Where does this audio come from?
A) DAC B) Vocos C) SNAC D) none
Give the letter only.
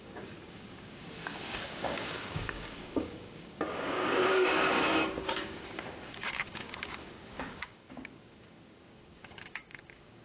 A